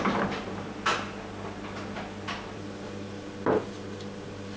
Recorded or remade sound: recorded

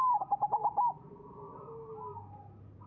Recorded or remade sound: recorded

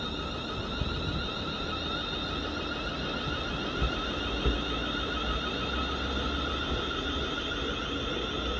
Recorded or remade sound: recorded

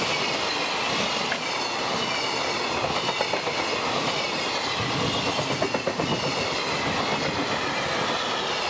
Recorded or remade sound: recorded